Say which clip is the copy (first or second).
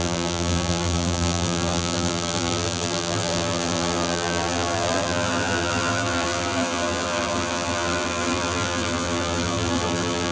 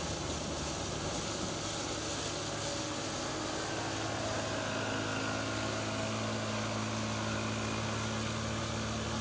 first